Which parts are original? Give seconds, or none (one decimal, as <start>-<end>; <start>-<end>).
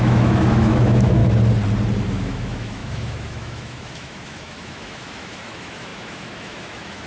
1.2-2.1